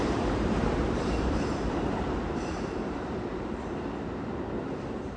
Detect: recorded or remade remade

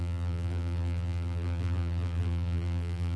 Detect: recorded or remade remade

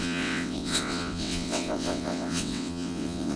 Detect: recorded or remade remade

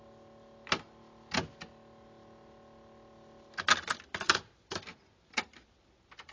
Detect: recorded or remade recorded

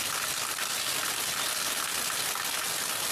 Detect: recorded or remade recorded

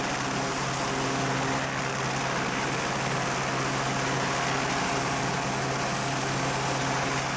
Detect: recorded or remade recorded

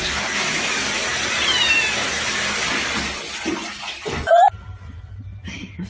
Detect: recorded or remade recorded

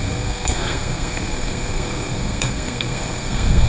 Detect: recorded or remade remade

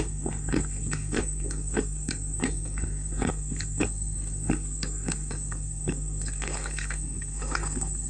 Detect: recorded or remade remade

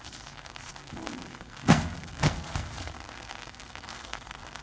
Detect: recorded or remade remade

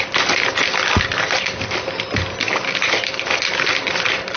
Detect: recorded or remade recorded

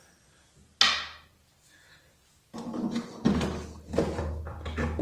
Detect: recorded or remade recorded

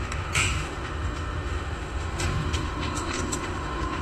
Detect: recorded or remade remade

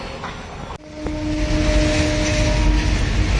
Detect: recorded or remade recorded